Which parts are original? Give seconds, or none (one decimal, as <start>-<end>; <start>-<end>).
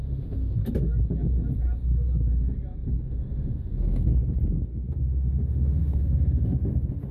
0.6-3.0; 3.7-5.0